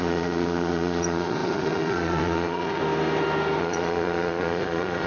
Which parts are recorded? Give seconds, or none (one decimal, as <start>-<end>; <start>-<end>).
2.8-3.6